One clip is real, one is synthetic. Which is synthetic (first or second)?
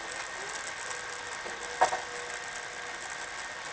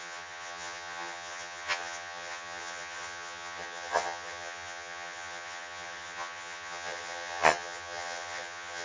second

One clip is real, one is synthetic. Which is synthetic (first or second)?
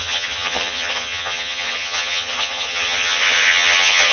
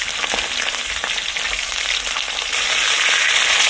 first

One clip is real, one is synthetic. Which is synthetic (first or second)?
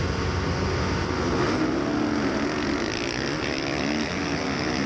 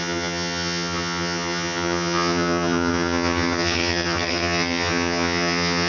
second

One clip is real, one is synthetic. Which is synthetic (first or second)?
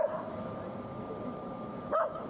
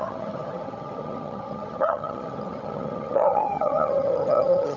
second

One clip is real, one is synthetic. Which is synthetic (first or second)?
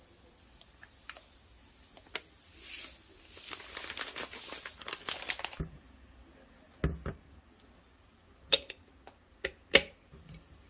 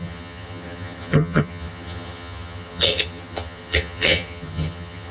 second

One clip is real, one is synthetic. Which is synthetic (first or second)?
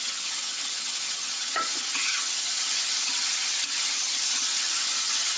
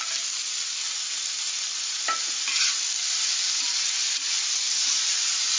first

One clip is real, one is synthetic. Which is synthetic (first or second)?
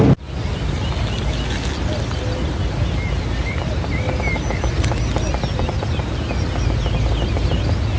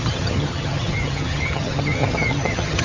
second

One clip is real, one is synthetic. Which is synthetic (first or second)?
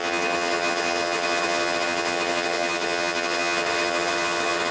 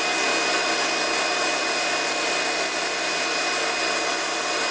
first